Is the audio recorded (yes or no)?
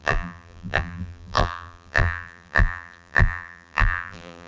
no